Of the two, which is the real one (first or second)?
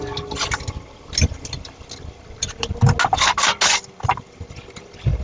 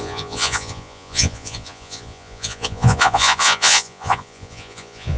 first